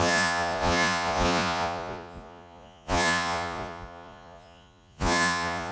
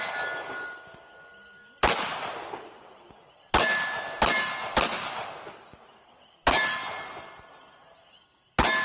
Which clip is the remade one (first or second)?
first